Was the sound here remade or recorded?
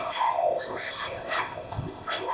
remade